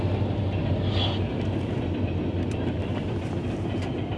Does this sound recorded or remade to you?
recorded